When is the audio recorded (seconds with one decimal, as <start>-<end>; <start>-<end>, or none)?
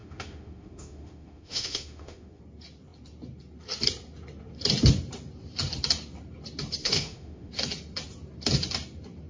2.4-6.8; 7.5-9.3